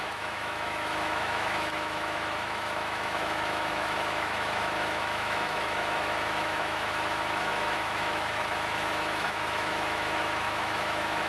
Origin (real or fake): fake